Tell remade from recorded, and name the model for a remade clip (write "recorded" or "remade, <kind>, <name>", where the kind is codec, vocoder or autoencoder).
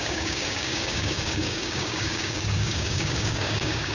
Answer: remade, codec, DAC